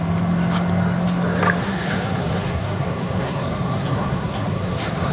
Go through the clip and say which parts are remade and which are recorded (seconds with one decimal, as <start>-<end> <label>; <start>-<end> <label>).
0.0-1.6 recorded; 1.6-5.1 remade